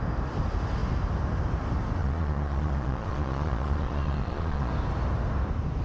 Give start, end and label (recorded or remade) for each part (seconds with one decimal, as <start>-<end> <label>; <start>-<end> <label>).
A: 0.0-2.0 recorded; 2.0-4.7 remade; 4.7-5.8 recorded